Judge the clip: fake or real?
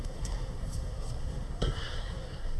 fake